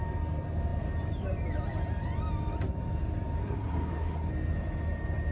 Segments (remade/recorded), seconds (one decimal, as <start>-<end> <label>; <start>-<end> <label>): 0.0-3.4 recorded; 3.4-4.3 remade; 4.3-5.3 recorded